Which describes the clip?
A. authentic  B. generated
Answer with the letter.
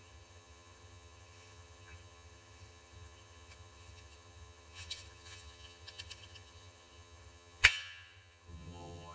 B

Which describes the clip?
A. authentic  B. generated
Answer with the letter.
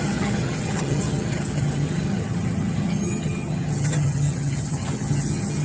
B